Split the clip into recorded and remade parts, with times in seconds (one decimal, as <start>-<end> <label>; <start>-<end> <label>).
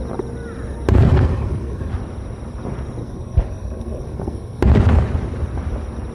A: 0.0-1.1 recorded; 1.1-1.9 remade; 1.9-3.0 recorded; 3.0-4.6 remade; 4.6-6.1 recorded